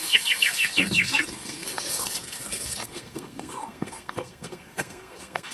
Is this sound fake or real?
fake